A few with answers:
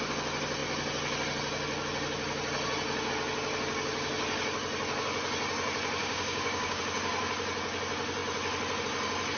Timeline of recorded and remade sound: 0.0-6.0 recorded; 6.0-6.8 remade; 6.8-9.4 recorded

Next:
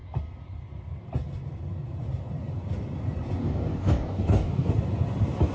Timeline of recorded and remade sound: 0.0-3.4 recorded; 3.4-4.7 remade; 4.7-5.5 recorded

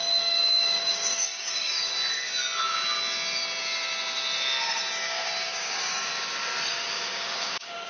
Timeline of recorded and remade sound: 0.0-2.0 remade; 2.0-4.9 recorded; 4.9-6.1 remade; 6.1-6.7 recorded; 6.7-7.9 remade

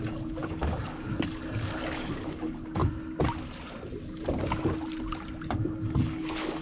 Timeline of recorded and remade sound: 0.0-2.8 remade; 2.8-5.5 recorded; 5.5-6.6 remade

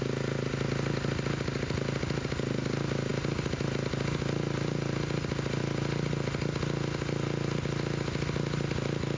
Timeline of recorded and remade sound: 0.0-9.2 recorded

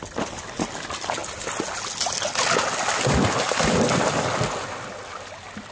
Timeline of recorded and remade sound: 0.0-5.7 recorded

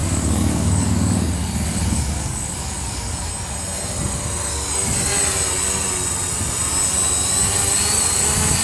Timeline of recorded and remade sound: 0.0-3.3 remade; 3.3-8.6 recorded